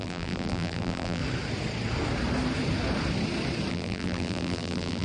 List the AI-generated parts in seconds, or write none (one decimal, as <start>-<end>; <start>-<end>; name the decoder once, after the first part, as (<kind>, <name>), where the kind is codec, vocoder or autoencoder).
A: 0.0-1.2 (vocoder, BigVGAN v2); 3.7-5.0